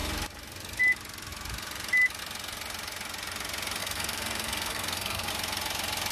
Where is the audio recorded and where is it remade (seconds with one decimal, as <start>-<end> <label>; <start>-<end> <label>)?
0.0-3.8 recorded; 3.8-5.3 remade; 5.3-6.1 recorded